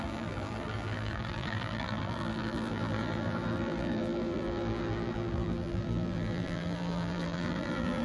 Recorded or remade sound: remade